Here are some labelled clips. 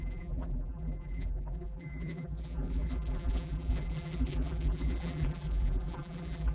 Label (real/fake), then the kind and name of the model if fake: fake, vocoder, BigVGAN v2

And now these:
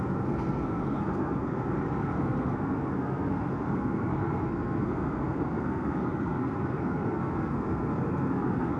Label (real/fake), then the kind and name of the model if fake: fake, codec, SNAC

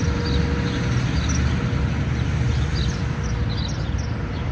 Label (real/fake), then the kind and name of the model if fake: real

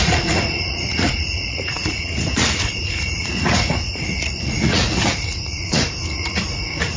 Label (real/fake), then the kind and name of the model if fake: fake, vocoder, Vocos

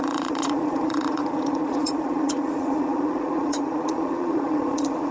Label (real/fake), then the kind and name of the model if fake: fake, vocoder, Vocos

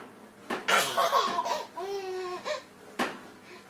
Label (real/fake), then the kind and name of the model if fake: real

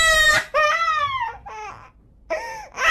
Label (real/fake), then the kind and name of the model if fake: real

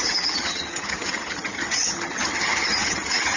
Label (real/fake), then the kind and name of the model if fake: fake, vocoder, HiFi-GAN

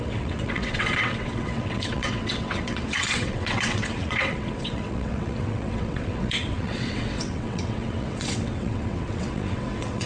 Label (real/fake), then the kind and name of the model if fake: fake, vocoder, WaveNeXt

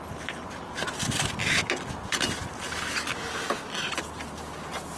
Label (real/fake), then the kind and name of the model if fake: real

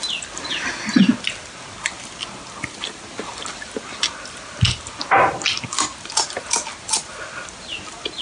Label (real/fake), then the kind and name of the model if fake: real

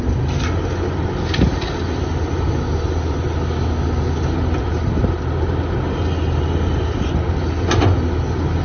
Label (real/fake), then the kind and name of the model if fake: real